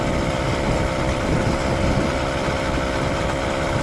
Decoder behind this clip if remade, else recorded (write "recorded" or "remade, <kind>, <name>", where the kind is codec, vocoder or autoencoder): recorded